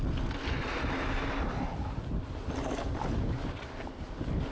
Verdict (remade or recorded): recorded